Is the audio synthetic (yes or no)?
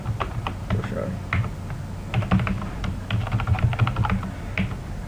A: no